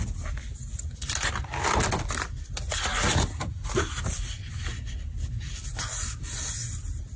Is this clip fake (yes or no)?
no